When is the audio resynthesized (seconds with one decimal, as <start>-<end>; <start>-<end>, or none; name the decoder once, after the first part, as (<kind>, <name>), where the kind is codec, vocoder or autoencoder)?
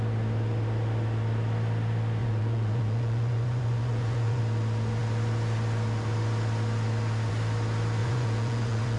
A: 2.2-4.4 (vocoder, Vocos); 8.0-9.0